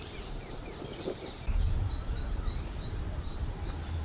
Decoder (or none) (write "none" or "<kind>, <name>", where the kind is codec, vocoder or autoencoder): vocoder, BigVGAN v2